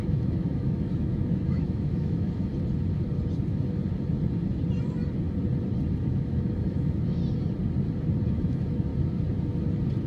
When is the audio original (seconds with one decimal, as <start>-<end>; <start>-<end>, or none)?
2.5-6.0; 7.2-8.3; 8.9-10.1